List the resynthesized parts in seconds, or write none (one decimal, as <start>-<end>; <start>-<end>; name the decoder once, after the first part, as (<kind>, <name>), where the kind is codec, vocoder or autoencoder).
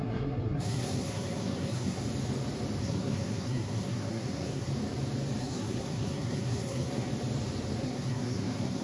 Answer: 0.0-2.0 (codec, SNAC); 2.8-4.7; 5.4-7.1; 7.8-8.8